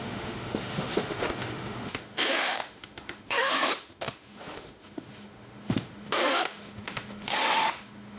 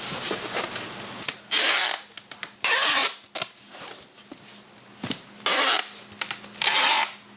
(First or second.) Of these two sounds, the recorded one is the second